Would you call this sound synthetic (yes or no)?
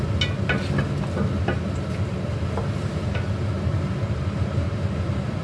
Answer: no